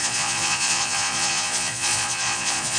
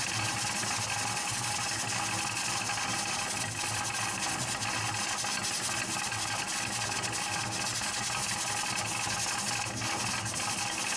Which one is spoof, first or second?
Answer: first